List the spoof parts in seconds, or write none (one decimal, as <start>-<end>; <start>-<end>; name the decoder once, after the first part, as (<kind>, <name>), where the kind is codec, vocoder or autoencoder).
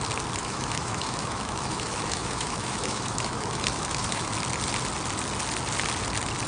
0.4-4.3 (autoencoder, DAC-VAE)